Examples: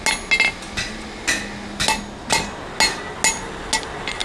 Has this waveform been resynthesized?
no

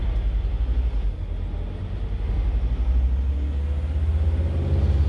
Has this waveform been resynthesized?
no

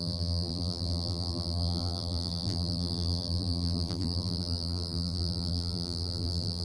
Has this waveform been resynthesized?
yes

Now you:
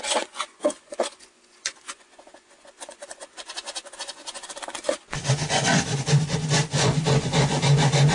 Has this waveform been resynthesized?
yes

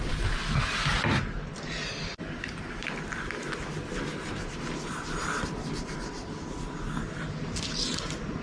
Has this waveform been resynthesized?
no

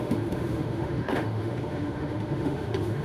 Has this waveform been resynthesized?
yes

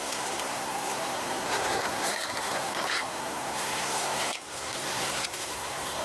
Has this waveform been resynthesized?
yes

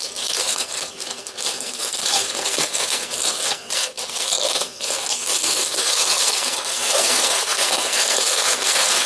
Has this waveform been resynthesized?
yes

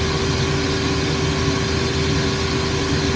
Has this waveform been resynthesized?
no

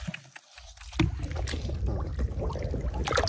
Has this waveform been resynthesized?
no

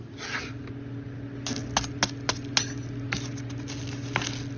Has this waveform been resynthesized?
no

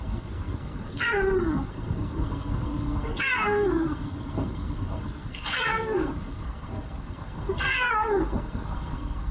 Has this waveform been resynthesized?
yes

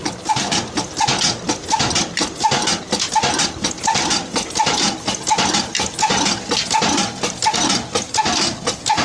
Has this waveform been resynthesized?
no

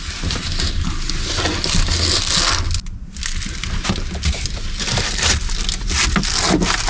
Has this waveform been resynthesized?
no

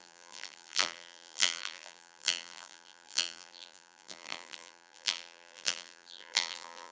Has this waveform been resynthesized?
yes